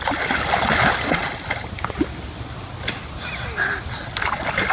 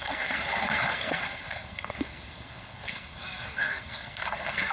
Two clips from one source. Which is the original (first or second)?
first